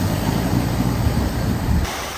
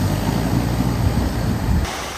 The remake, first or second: first